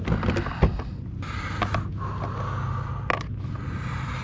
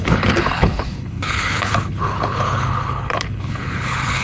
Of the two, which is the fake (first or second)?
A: second